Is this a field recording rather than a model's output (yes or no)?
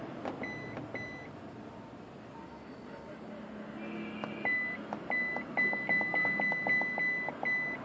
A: yes